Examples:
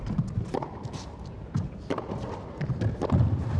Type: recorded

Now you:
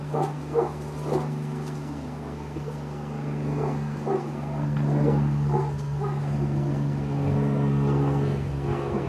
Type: remade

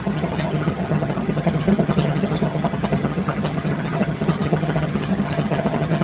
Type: remade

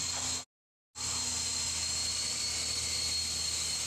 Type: recorded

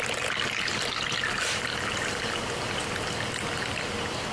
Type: recorded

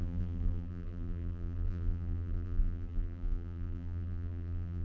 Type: remade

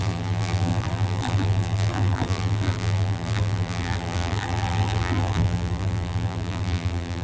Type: remade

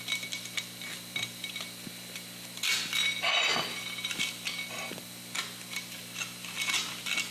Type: recorded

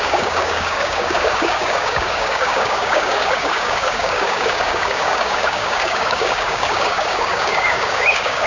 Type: remade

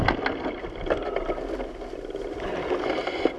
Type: recorded